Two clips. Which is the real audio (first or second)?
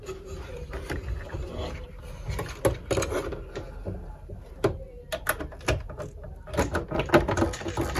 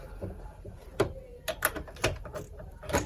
first